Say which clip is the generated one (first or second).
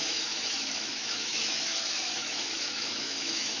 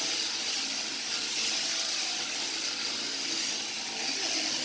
first